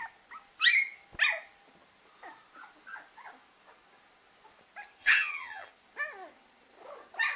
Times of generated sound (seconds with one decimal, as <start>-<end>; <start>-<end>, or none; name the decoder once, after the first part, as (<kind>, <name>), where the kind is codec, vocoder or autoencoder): 5.0-5.7 (vocoder, HiFi-GAN)

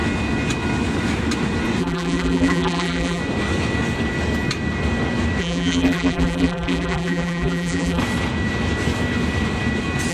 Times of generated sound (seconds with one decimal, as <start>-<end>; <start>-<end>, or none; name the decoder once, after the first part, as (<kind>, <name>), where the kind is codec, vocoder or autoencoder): 1.8-3.2 (vocoder, BigVGAN v2); 5.4-8.0

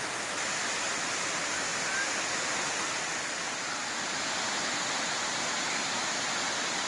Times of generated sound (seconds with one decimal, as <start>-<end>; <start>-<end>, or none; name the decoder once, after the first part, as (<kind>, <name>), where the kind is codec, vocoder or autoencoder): none

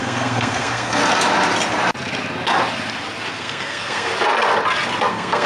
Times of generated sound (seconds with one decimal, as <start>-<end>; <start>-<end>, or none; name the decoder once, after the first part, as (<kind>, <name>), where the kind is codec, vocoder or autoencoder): 0.0-1.0 (codec, SNAC); 3.3-4.1; 5.1-5.5